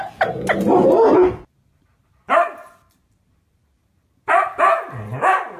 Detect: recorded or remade recorded